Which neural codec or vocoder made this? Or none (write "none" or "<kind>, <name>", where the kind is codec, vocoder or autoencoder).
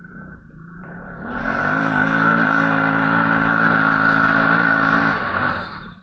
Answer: vocoder, BigVGAN v2